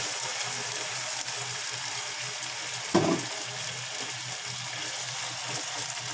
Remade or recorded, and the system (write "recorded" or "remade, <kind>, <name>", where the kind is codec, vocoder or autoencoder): recorded